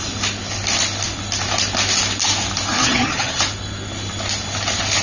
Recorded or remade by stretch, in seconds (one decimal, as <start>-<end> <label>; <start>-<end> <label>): 0.0-2.8 recorded; 2.8-3.4 remade; 3.4-5.0 recorded